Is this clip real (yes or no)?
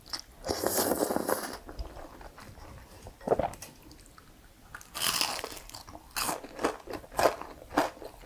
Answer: yes